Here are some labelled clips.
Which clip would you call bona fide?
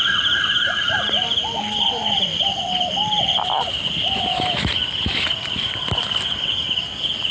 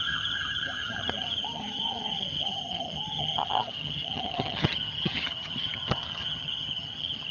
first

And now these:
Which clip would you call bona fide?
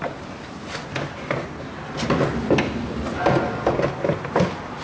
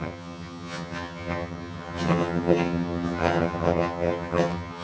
first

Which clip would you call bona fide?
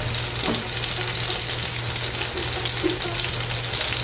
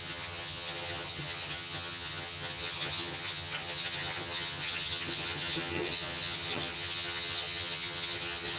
first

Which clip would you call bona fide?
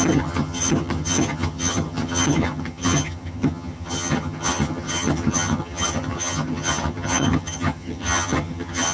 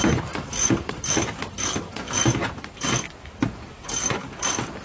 second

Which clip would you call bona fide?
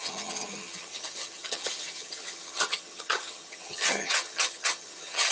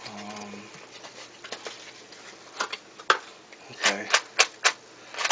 second